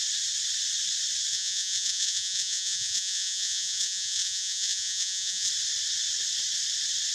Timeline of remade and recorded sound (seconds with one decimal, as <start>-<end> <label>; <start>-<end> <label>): 0.0-1.3 recorded; 1.3-5.5 remade; 5.5-7.1 recorded